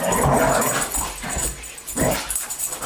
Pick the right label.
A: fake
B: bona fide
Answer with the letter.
B